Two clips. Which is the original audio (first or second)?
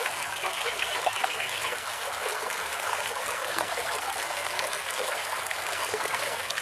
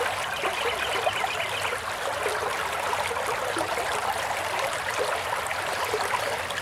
second